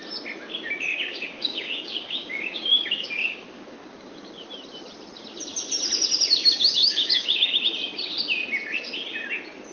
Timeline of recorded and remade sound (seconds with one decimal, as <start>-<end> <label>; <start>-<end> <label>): 0.0-0.9 recorded; 0.9-4.4 remade; 4.4-6.8 recorded; 6.8-7.6 remade; 7.6-9.7 recorded